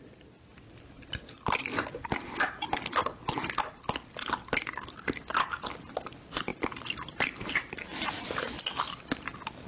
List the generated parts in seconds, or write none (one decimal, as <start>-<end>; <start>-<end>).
none